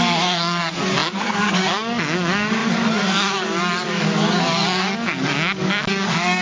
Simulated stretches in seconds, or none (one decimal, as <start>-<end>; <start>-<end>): 0.0-6.4